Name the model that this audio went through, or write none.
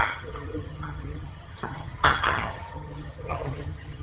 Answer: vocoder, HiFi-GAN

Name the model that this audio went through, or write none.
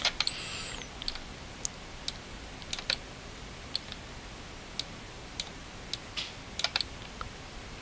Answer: none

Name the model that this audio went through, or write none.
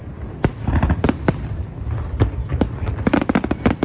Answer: vocoder, BigVGAN v2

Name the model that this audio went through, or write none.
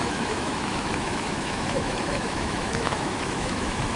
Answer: autoencoder, DAC-VAE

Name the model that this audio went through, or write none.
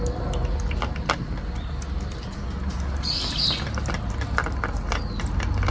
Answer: none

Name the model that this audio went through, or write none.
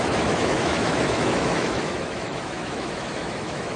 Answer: autoencoder, DAC-VAE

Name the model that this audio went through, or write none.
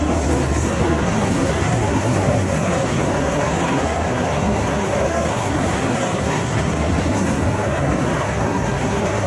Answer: codec, SNAC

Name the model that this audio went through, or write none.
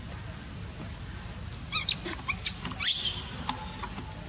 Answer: none